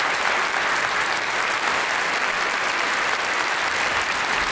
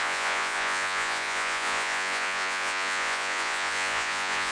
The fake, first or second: second